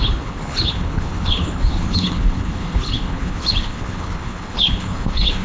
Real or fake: fake